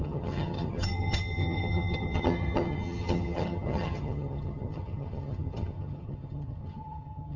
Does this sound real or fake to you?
fake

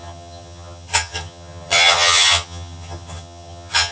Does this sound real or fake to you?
fake